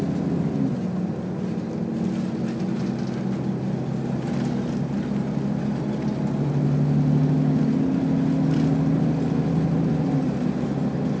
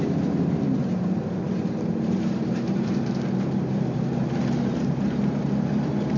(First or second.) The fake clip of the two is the second